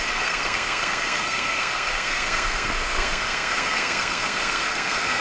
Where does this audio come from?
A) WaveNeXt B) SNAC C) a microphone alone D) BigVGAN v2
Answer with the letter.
B